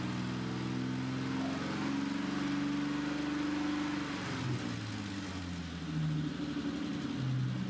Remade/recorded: recorded